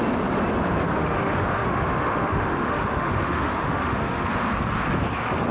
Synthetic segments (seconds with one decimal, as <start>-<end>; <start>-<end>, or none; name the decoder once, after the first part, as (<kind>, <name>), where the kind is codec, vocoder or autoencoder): 1.0-4.3 (autoencoder, DAC-VAE)